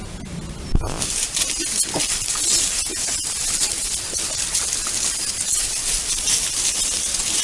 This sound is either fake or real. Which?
real